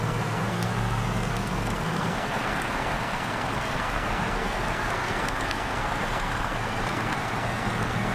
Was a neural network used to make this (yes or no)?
yes